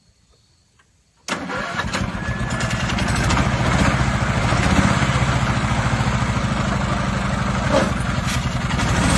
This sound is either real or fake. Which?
real